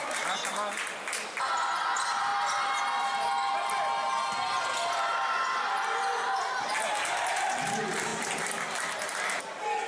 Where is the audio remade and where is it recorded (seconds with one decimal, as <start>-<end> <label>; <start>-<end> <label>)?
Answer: 0.0-8.1 recorded; 8.1-9.4 remade; 9.4-9.9 recorded